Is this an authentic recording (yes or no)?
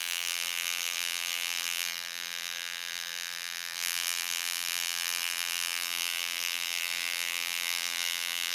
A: no